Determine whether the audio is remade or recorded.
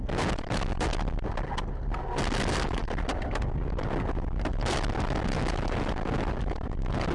recorded